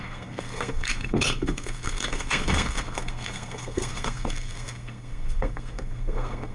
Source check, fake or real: fake